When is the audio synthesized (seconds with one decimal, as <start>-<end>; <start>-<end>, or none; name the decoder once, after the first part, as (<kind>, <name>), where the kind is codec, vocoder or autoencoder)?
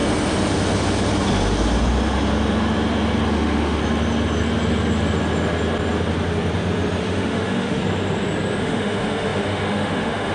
3.3-3.8 (autoencoder, DAC-VAE); 7.0-7.8; 8.6-10.3